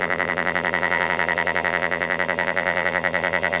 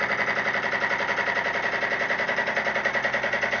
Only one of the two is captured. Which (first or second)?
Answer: second